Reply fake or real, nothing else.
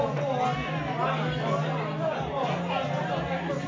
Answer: real